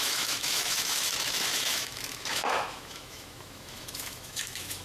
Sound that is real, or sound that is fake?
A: fake